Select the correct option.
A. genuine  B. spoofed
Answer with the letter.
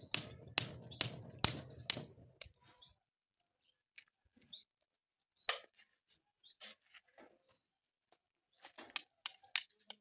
A